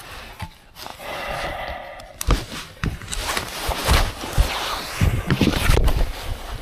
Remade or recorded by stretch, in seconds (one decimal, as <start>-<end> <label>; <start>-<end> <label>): 0.0-0.9 remade; 0.9-2.0 recorded; 2.0-3.8 remade; 3.8-4.8 recorded; 4.8-6.6 remade